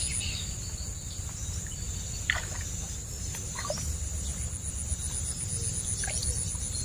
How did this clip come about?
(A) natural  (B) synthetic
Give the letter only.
A